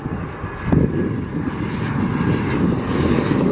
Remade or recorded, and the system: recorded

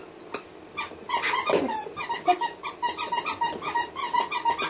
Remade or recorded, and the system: recorded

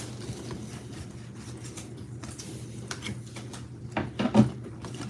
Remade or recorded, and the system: recorded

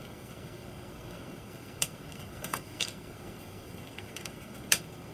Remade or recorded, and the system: remade, codec, SNAC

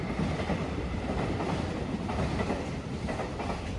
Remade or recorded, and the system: remade, vocoder, BigVGAN v2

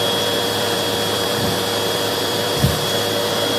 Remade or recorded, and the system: remade, vocoder, BigVGAN v2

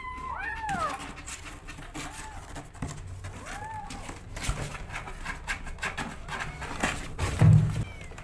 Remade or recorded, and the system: recorded